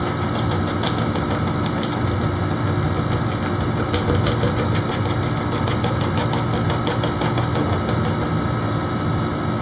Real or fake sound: real